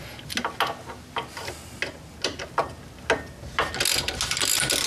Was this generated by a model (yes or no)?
no